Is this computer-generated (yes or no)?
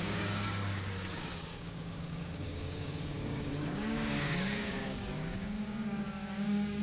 yes